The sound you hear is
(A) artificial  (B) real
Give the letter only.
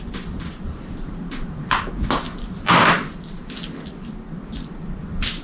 B